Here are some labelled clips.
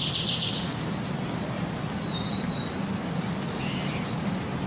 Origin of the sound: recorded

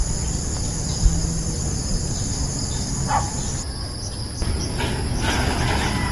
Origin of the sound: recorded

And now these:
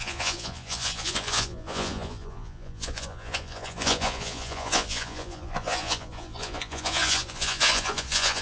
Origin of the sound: remade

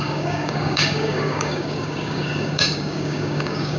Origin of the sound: remade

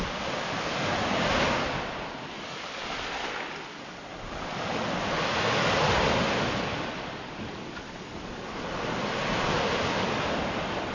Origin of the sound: recorded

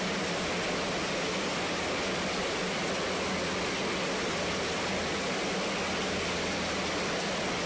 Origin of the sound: recorded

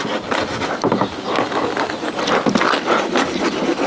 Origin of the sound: recorded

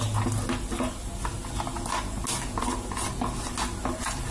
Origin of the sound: recorded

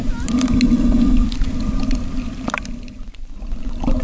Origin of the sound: recorded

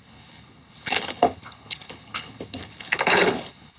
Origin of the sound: remade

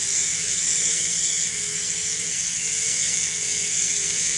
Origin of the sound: remade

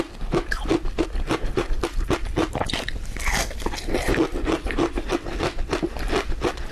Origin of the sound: recorded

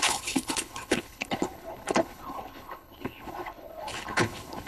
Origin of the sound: remade